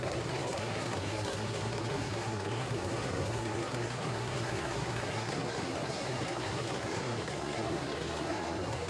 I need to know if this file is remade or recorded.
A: remade